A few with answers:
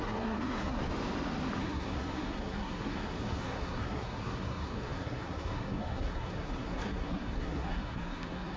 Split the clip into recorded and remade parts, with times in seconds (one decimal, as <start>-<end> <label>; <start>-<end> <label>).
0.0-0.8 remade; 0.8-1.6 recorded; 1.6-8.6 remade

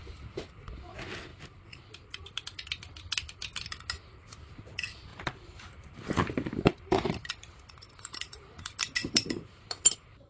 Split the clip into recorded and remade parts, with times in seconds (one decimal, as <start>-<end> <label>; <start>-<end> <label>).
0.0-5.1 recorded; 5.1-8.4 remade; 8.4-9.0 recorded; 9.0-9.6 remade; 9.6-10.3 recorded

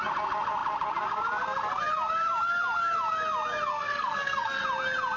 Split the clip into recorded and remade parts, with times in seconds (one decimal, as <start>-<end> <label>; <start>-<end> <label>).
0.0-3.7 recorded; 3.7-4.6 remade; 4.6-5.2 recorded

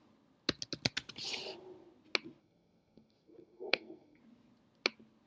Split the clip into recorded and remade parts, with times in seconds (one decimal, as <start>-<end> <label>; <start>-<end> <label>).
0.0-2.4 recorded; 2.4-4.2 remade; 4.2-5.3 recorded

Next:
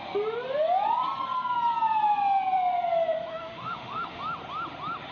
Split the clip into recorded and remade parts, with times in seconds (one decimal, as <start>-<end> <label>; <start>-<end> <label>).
0.0-3.3 recorded; 3.3-4.2 remade; 4.2-5.1 recorded